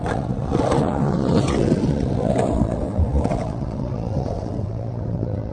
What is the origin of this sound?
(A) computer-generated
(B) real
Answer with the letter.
A